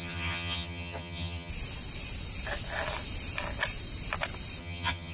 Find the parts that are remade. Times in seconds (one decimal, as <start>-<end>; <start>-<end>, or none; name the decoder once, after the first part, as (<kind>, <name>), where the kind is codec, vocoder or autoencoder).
0.0-1.5 (vocoder, HiFi-GAN); 4.6-5.1